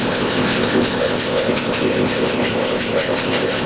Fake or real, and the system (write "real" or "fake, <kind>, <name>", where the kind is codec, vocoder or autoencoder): fake, codec, ZipCodec